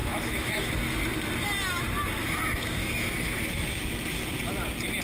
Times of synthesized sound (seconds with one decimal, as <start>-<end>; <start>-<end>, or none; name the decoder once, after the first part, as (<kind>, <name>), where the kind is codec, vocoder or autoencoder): 0.0-0.7 (autoencoder, DAC-VAE); 2.2-3.8